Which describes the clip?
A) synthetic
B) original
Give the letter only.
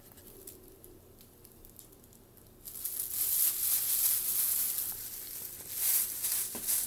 B